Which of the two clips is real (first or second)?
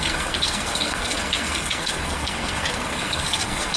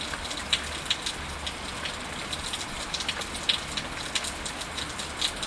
second